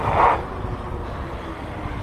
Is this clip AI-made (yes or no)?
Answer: no